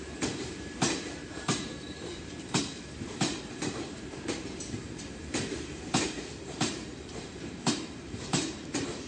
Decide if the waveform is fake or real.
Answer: fake